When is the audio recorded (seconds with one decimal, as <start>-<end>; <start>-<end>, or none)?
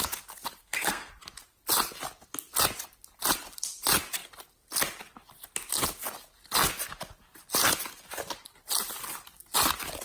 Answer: 0.0-0.6; 1.1-10.0